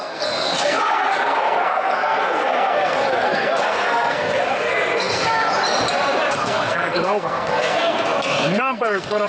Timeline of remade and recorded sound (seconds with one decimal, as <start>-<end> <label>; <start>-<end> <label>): 0.0-5.5 remade; 5.5-6.3 recorded; 6.3-9.3 remade